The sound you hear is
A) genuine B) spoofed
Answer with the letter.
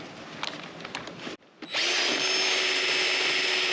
A